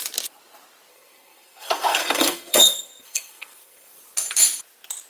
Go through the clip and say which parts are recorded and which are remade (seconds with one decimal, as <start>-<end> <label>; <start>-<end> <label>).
0.0-0.9 recorded; 0.9-4.0 remade; 4.0-5.1 recorded